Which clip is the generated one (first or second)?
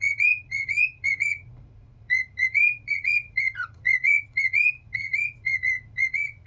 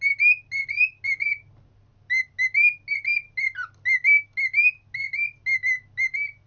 first